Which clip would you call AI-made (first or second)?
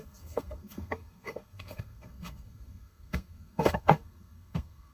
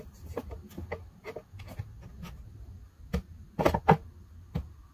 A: first